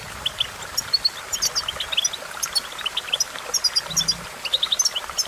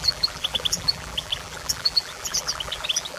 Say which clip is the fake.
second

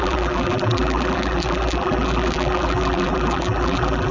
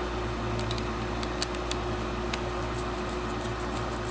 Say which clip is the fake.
first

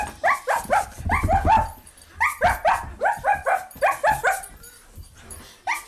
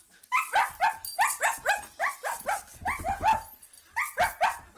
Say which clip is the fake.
first